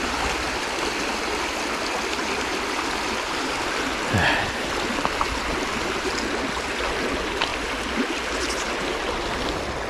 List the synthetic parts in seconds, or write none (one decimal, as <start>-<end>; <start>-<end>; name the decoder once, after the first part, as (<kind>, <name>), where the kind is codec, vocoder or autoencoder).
none

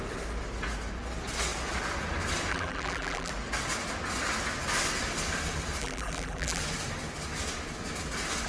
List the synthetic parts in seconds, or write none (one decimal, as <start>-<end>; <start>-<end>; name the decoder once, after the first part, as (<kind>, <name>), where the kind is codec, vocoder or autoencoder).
2.5-3.3 (vocoder, BigVGAN v2); 5.8-6.6

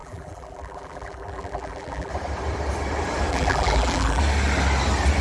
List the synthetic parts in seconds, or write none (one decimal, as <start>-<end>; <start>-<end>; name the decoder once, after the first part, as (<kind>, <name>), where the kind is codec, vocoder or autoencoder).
0.0-2.1 (vocoder, BigVGAN v2); 3.3-4.2

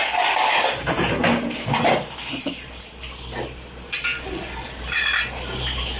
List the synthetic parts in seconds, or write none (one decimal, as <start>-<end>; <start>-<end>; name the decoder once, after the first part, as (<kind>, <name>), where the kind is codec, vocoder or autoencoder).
4.1-5.2 (vocoder, BigVGAN v2)

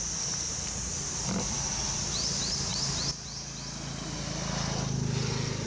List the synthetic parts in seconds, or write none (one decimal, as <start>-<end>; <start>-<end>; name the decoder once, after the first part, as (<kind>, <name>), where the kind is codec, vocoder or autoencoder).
none

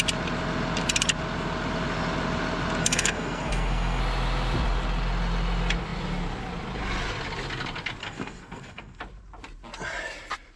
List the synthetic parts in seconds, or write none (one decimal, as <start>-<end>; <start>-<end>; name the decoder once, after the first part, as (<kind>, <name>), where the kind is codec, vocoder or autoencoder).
2.8-4.0 (codec, SNAC); 8.0-9.0

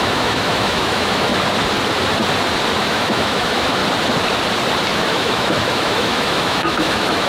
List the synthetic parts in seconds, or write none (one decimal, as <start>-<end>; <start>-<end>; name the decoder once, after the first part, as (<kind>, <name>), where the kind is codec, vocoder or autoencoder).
0.0-1.3 (autoencoder, DAC-VAE); 2.8-3.8; 4.9-7.3